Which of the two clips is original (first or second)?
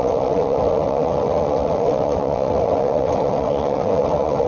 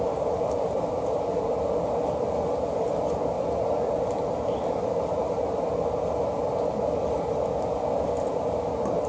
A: second